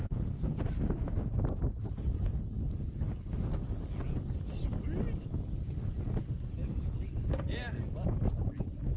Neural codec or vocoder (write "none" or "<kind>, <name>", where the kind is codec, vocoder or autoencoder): none